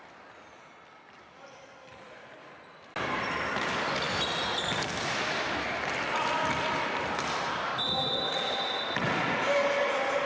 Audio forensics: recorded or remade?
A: recorded